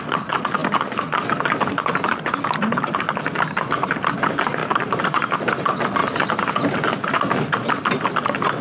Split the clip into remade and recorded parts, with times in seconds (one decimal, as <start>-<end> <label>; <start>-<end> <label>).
0.0-4.6 recorded; 4.6-5.3 remade; 5.3-6.0 recorded; 6.0-6.5 remade; 6.5-8.6 recorded